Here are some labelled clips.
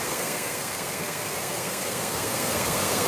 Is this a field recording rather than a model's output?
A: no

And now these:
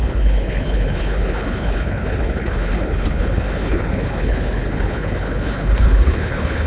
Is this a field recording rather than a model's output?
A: no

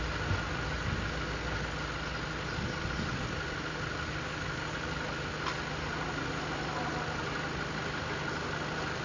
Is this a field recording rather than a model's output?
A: yes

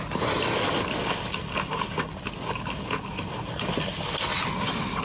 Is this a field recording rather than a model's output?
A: yes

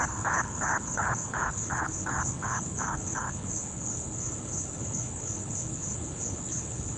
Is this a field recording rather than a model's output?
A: no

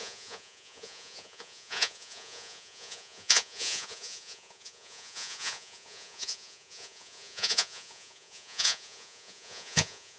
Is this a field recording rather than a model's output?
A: no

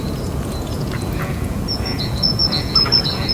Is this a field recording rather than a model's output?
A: no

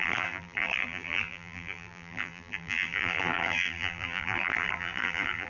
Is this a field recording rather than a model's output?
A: no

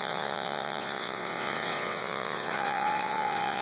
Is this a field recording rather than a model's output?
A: no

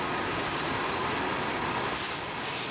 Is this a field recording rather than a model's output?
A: yes